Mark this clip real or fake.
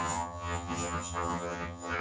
fake